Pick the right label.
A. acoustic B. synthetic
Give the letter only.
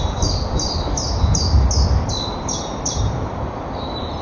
A